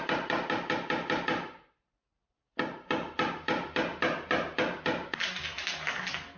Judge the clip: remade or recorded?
recorded